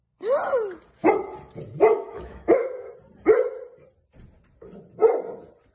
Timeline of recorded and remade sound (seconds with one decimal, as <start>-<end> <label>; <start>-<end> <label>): 0.0-1.9 recorded; 1.9-2.9 remade; 2.9-5.7 recorded